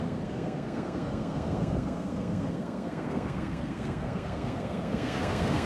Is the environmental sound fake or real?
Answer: fake